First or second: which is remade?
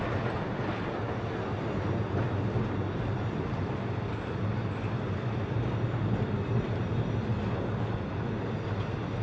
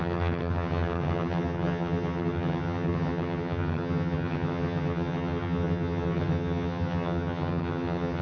second